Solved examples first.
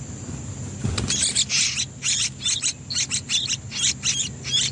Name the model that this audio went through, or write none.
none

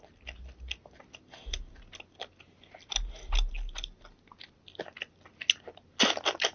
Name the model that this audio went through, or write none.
none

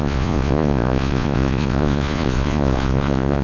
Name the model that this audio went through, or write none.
vocoder, Vocos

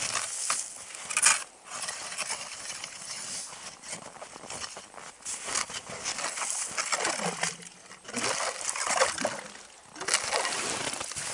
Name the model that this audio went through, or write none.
none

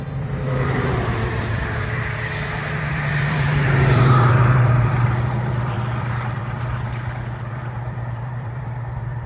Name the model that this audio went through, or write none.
vocoder, BigVGAN v2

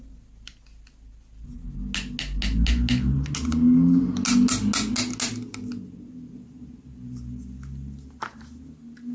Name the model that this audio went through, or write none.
none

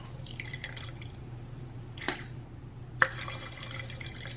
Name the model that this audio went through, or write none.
none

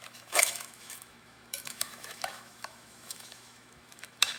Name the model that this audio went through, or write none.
autoencoder, DAC-VAE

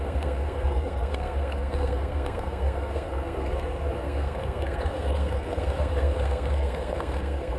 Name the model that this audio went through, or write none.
codec, SNAC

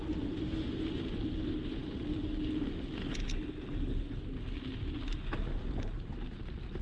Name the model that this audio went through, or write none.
none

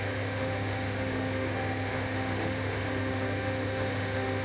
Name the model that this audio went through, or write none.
autoencoder, DAC-VAE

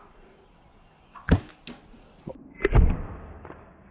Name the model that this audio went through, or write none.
none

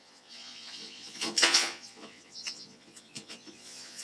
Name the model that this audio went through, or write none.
vocoder, Vocos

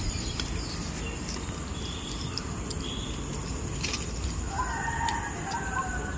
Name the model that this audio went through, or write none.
none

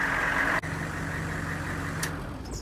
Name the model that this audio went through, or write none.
none